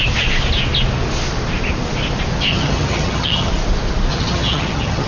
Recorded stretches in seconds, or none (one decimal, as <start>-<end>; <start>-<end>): 0.0-2.5; 3.5-4.1